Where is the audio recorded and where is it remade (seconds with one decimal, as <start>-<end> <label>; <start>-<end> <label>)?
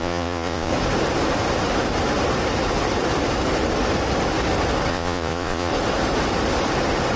0.0-0.7 remade; 0.7-4.9 recorded; 4.9-5.7 remade; 5.7-7.2 recorded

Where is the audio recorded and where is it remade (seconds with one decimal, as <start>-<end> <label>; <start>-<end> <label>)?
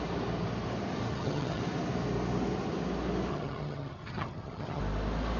0.0-1.1 recorded; 1.1-1.6 remade; 1.6-3.3 recorded; 3.3-4.8 remade; 4.8-5.4 recorded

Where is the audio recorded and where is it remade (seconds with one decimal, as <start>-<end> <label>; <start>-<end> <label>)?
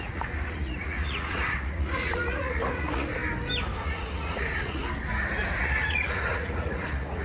0.0-3.2 remade; 3.2-3.8 recorded; 3.8-4.8 remade; 4.8-5.6 recorded; 5.6-7.2 remade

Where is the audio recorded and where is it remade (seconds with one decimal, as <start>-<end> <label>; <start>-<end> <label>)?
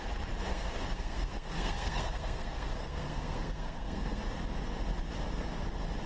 0.0-0.5 recorded; 0.5-4.2 remade; 4.2-6.1 recorded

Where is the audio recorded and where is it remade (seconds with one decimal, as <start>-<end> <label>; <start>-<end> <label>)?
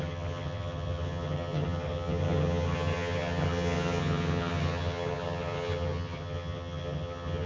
0.0-7.5 remade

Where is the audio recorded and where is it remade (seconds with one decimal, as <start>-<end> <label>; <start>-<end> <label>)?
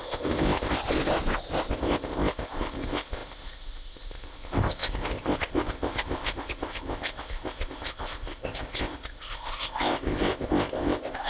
0.0-0.8 remade; 0.8-1.7 recorded; 1.7-11.3 remade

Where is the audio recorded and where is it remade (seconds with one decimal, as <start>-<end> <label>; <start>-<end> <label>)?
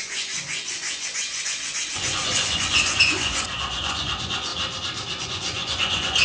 0.0-4.5 remade; 4.5-5.2 recorded; 5.2-6.2 remade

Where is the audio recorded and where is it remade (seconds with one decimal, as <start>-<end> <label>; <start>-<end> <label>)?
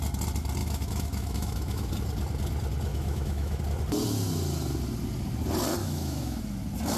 0.0-0.6 recorded; 0.6-1.9 remade; 1.9-2.9 recorded; 2.9-3.6 remade; 3.6-5.8 recorded; 5.8-6.4 remade; 6.4-7.0 recorded